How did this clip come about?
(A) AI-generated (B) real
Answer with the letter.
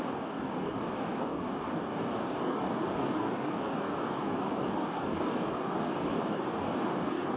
A